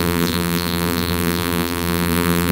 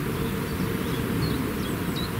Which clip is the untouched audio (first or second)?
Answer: second